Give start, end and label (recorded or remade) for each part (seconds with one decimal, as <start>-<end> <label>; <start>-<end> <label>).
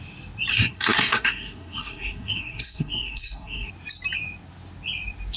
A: 0.0-0.5 recorded; 0.5-3.7 remade; 3.7-5.4 recorded